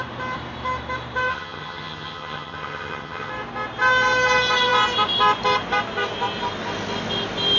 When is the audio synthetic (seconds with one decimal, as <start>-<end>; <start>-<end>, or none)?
1.3-3.3

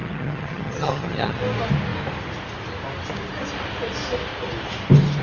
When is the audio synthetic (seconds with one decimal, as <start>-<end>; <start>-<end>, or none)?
0.0-1.4

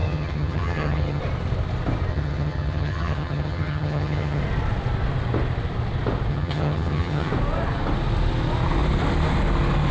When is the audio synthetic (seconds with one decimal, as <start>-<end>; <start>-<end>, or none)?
0.0-1.2; 2.1-4.4; 6.3-7.3

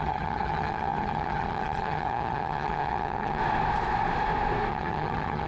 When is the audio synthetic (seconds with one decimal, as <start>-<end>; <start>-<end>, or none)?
0.0-3.4; 4.7-5.5

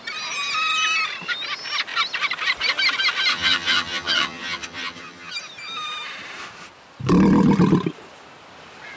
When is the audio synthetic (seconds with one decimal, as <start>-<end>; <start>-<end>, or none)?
3.3-5.3